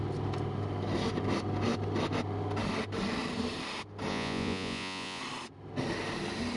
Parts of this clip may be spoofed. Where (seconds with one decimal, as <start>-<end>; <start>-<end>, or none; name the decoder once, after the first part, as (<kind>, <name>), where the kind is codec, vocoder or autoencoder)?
4.1-5.2 (vocoder, Vocos)